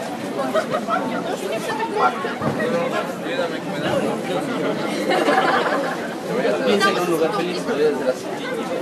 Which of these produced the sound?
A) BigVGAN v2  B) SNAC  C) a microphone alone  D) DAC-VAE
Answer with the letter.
C